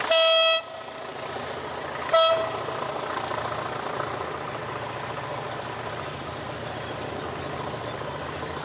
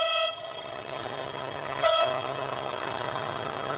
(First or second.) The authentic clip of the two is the first